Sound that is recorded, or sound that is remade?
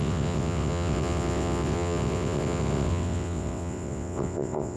remade